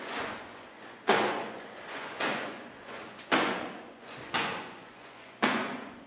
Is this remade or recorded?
remade